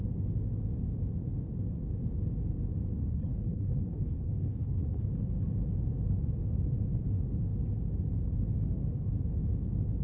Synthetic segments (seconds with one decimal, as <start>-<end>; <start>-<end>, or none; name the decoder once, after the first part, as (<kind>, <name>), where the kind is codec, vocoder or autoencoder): 3.0-5.0 (codec, HILCodec)